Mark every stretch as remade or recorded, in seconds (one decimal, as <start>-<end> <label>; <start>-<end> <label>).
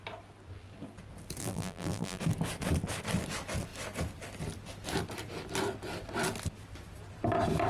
0.0-1.4 recorded; 1.4-2.2 remade; 2.2-7.7 recorded